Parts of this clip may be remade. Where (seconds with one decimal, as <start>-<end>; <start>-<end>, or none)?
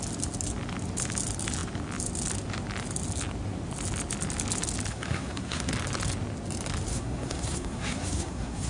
4.9-5.7; 6.9-8.7